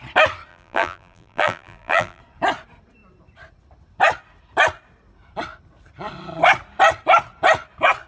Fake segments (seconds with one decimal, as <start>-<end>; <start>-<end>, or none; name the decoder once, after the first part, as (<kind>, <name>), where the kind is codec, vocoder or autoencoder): 0.5-2.2 (vocoder, BigVGAN v2)